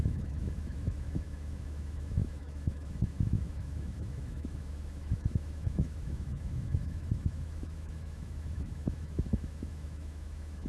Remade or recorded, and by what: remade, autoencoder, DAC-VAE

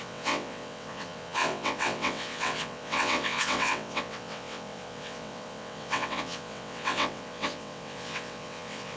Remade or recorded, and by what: remade, vocoder, WaveNeXt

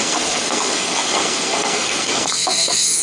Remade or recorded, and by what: remade, codec, SNAC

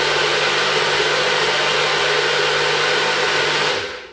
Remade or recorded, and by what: recorded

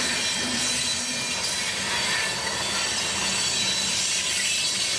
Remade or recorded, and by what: recorded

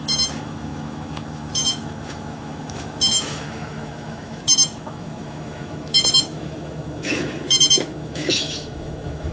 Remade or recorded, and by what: remade, autoencoder, DAC-VAE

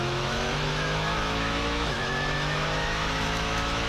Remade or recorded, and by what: remade, autoencoder, DAC-VAE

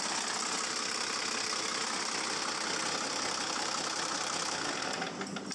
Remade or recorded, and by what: recorded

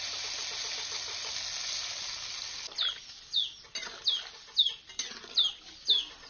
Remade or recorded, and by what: recorded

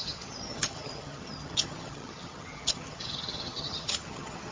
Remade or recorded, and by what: remade, vocoder, HiFi-GAN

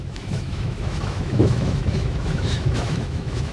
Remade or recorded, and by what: remade, autoencoder, DAC-VAE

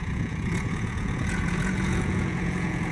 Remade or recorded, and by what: remade, vocoder, Vocos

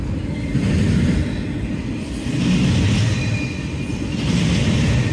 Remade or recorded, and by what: recorded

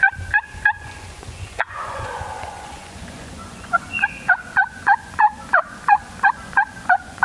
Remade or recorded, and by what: remade, vocoder, Vocos